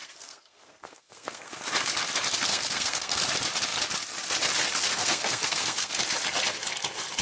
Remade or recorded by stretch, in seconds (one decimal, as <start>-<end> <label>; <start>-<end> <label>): 0.0-1.6 remade; 1.6-2.5 recorded; 2.5-3.2 remade; 3.2-5.0 recorded; 5.0-6.0 remade; 6.0-7.2 recorded